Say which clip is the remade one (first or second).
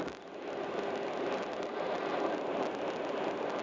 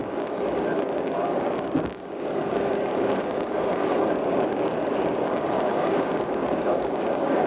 second